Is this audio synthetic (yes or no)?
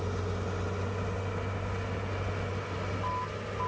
no